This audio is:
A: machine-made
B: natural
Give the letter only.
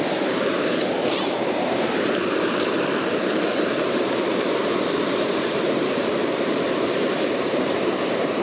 A